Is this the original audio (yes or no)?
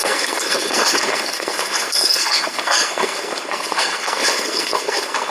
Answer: no